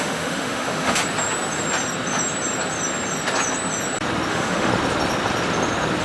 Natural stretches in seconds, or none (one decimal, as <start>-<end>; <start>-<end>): 1.0-4.3; 4.7-6.0